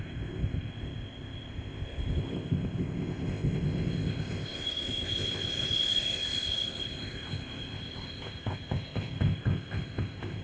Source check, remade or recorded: remade